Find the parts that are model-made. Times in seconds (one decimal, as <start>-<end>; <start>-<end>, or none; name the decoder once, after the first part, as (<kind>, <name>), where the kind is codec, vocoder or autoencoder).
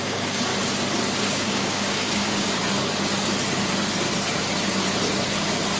0.0-0.5 (codec, DAC); 1.2-2.6